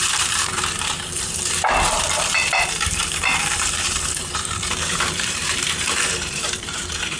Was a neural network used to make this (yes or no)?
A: yes